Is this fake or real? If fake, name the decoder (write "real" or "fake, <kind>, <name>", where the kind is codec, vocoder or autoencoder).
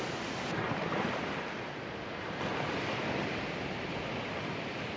real